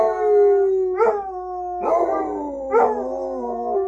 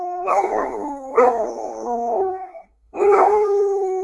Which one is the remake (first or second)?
second